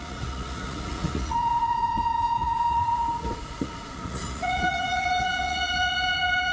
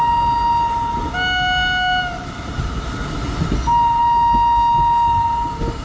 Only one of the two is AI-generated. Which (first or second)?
first